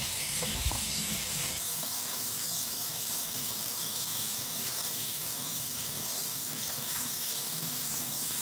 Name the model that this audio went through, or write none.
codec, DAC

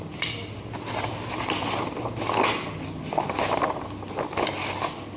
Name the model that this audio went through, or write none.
none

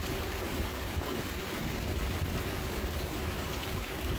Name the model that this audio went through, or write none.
codec, DAC